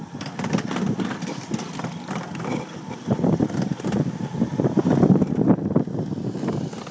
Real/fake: real